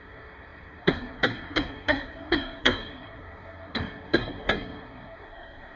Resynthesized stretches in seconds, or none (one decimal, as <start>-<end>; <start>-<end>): 0.0-5.8